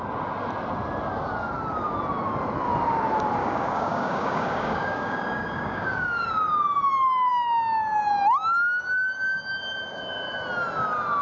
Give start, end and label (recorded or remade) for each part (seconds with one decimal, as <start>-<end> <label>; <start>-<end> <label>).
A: 0.0-3.4 recorded; 3.4-6.3 remade; 6.3-11.2 recorded